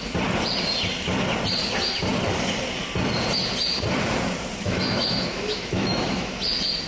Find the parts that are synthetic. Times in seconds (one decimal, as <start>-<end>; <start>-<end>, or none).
4.6-6.4